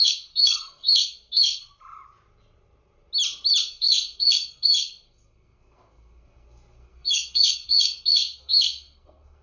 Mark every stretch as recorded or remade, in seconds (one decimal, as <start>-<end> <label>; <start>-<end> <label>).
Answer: 0.0-1.6 remade; 1.6-3.7 recorded; 3.7-9.4 remade